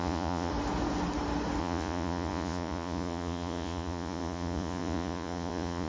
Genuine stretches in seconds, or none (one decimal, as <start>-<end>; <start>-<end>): 0.5-1.6